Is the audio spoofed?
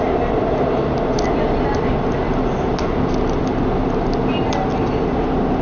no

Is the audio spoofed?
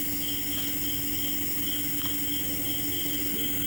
no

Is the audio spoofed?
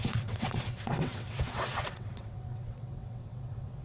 yes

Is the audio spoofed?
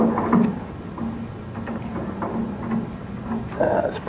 no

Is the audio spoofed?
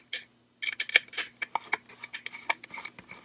no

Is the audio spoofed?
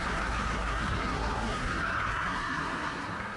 yes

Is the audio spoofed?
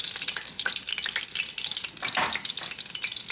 no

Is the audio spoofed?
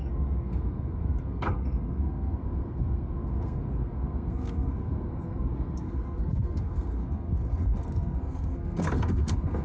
yes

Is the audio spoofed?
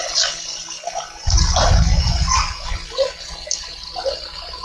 no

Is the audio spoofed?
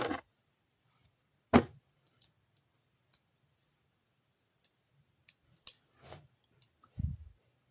no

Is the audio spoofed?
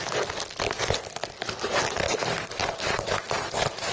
no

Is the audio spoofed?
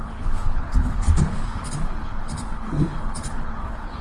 yes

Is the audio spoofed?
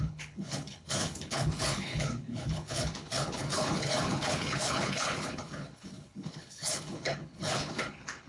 yes